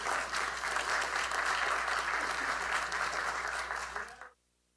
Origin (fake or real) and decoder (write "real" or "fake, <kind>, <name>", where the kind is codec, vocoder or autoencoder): real